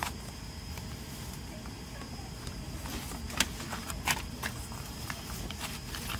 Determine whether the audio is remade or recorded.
recorded